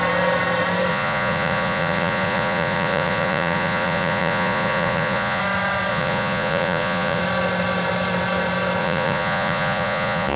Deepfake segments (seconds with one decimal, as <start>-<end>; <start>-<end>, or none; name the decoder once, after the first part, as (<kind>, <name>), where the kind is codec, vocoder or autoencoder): 0.9-5.4 (vocoder, Vocos); 5.9-7.2; 8.8-10.4